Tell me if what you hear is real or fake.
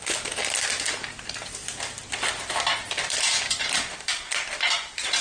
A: real